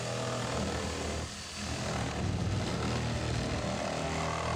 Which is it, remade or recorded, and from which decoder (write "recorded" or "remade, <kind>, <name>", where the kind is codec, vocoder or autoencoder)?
recorded